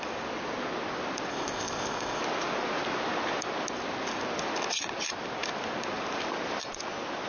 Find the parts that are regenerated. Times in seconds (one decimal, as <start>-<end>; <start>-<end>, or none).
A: 1.3-2.2